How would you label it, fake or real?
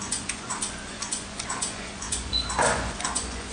fake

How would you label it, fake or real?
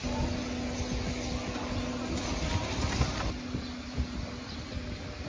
real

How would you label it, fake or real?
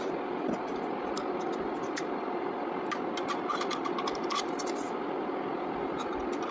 real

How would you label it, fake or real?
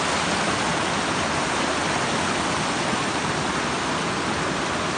real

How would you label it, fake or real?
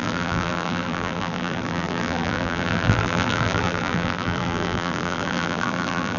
fake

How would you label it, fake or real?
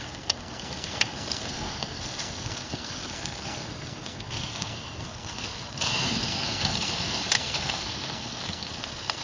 fake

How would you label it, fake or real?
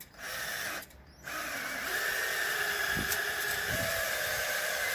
real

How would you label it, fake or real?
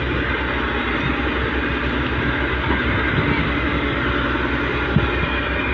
real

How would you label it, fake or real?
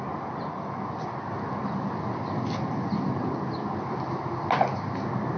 real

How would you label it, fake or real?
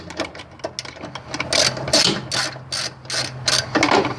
real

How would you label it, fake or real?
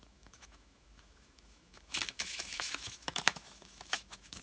fake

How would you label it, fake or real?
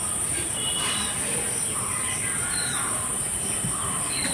real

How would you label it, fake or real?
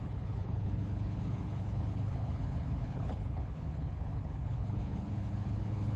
fake